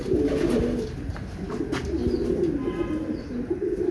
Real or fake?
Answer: real